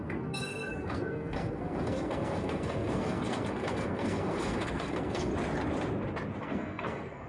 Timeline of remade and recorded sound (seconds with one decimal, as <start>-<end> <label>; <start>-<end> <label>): 0.0-5.3 remade; 5.3-6.4 recorded; 6.4-7.3 remade